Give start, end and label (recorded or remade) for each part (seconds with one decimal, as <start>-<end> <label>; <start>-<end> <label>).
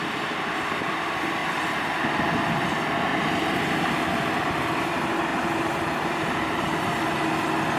0.0-5.3 recorded; 5.3-6.6 remade; 6.6-7.8 recorded